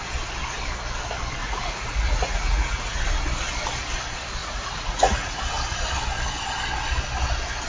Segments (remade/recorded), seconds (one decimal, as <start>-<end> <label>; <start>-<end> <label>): 0.0-1.4 recorded; 1.4-3.0 remade; 3.0-4.4 recorded; 4.4-5.4 remade; 5.4-7.7 recorded